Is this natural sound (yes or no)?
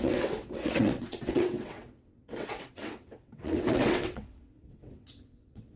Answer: no